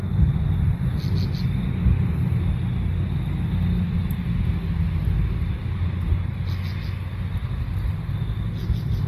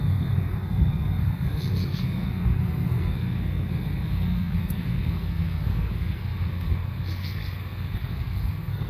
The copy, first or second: second